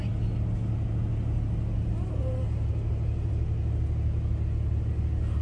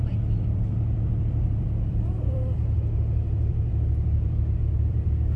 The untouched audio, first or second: first